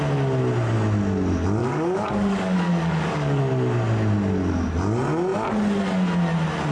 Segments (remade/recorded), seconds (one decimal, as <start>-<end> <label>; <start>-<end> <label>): 0.0-1.6 recorded; 1.6-3.4 remade; 3.4-6.7 recorded